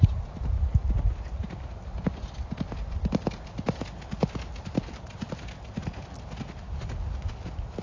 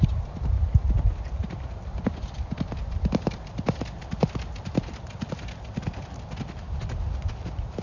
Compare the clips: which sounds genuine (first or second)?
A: first